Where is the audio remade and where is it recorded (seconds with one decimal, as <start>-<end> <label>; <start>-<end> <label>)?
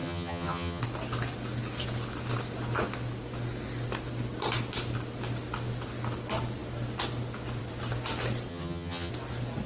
0.0-0.8 remade; 0.8-8.5 recorded; 8.5-9.1 remade; 9.1-9.7 recorded